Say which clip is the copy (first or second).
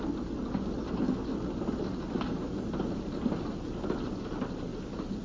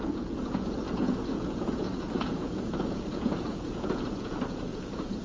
second